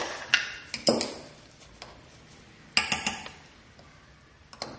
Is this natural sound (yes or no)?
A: yes